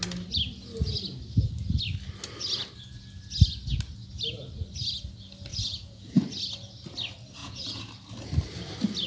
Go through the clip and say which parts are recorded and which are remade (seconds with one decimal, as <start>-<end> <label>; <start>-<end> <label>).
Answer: 0.0-5.5 recorded; 5.5-6.1 remade; 6.1-7.4 recorded; 7.4-7.9 remade; 7.9-9.1 recorded

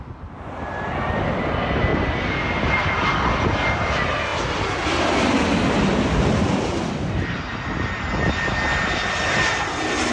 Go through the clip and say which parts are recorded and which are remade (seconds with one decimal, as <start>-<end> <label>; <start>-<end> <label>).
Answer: 0.0-10.1 recorded

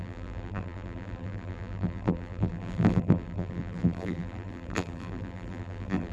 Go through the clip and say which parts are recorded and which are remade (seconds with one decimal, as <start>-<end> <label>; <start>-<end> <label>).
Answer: 0.0-6.1 remade

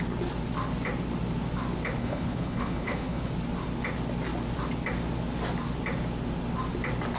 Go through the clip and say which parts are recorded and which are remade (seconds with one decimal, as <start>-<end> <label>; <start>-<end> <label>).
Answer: 0.0-2.0 recorded; 2.0-3.3 remade; 3.3-7.2 recorded